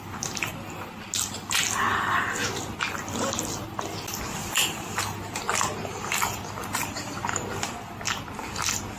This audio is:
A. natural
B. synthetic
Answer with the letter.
A